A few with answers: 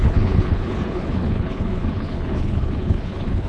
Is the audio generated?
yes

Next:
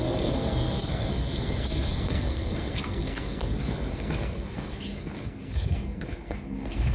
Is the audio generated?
yes